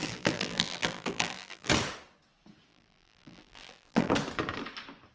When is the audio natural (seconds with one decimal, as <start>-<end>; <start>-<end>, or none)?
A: 1.7-2.7; 4.1-5.1